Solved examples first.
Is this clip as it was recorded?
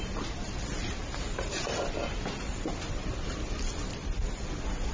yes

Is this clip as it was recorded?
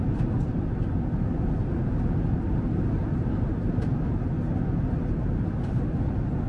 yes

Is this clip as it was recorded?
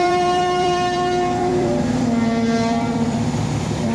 no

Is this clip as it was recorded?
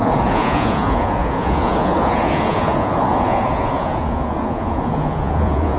no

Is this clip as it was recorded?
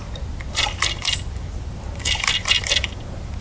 yes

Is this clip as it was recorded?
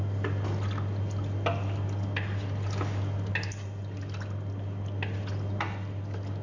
yes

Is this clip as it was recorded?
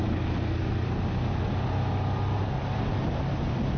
yes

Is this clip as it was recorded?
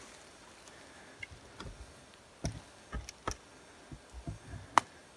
yes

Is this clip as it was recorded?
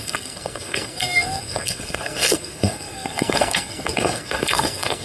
no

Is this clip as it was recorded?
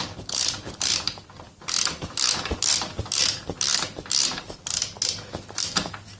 yes